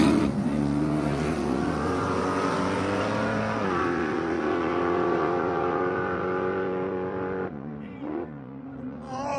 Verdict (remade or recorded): remade